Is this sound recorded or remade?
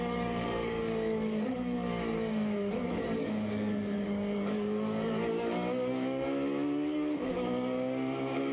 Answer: remade